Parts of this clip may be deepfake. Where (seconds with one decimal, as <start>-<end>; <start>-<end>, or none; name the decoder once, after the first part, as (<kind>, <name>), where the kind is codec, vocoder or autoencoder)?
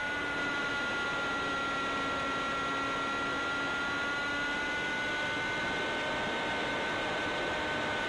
0.0-0.7 (vocoder, BigVGAN v2); 6.6-8.1